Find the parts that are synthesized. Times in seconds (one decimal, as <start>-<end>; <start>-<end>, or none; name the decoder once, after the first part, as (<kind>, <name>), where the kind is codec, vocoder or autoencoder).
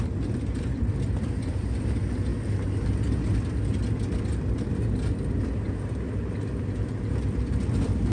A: none